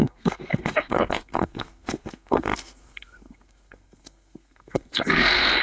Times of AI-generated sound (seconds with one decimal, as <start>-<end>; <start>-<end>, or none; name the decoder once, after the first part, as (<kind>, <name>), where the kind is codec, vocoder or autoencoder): 0.0-5.6 (codec, SNAC)